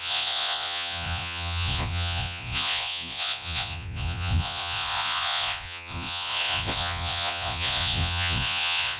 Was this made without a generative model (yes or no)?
no